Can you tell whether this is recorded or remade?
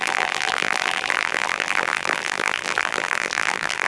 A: remade